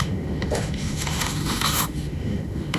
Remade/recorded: remade